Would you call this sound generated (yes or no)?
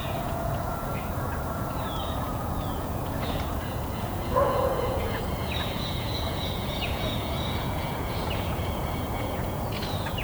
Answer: yes